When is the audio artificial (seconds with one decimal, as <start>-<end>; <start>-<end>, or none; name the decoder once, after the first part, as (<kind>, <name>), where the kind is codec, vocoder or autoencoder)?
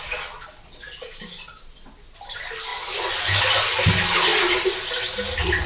none